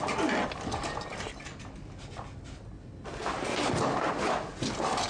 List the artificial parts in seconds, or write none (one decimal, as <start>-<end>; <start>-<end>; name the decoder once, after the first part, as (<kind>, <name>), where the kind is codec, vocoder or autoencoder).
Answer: none